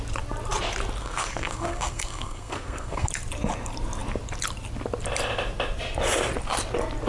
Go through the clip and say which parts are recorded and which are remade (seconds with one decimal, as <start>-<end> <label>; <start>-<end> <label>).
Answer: 0.0-1.0 recorded; 1.0-3.1 remade; 3.1-7.1 recorded